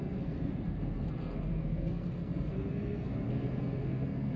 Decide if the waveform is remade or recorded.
remade